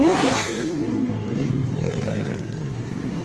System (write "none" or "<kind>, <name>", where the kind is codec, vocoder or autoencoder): codec, SNAC